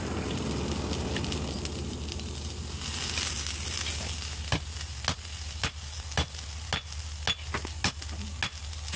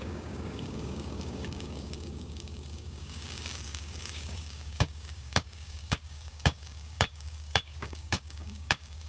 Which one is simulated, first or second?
second